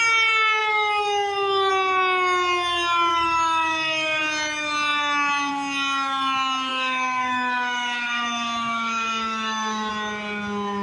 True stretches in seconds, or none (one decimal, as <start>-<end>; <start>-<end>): 0.0-0.6; 1.7-3.1; 4.2-6.7; 9.9-10.8